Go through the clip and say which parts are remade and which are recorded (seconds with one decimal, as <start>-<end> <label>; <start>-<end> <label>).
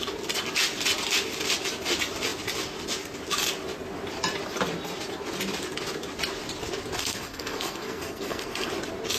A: 0.0-7.0 recorded; 7.0-8.7 remade; 8.7-9.2 recorded